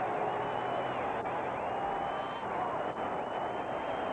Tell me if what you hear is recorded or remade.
recorded